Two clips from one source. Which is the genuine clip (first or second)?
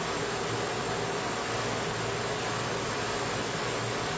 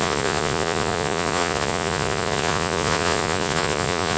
first